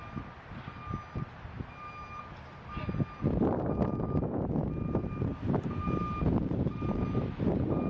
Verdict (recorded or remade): recorded